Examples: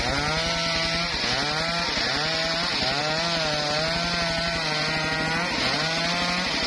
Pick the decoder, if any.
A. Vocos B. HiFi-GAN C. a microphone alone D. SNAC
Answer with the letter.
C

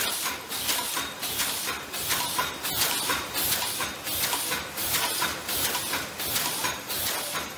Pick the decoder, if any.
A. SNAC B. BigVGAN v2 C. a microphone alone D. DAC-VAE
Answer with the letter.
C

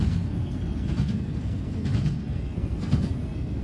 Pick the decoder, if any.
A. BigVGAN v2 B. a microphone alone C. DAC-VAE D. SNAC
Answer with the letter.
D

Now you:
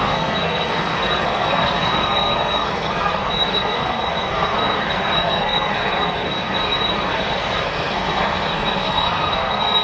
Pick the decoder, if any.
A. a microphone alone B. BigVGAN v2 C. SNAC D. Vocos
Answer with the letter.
C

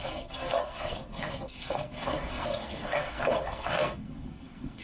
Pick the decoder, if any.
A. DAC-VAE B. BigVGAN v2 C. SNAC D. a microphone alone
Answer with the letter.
C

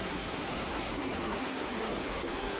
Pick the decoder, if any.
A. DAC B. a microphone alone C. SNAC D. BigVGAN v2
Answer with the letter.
C